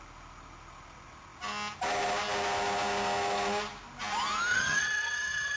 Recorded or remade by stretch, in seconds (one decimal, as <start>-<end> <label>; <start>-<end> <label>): 0.0-4.5 recorded; 4.5-5.6 remade